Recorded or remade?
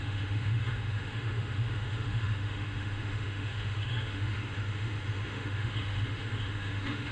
remade